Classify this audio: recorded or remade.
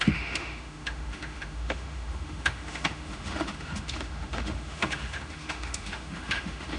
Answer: remade